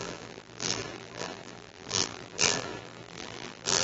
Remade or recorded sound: remade